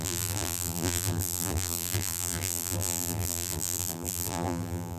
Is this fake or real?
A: fake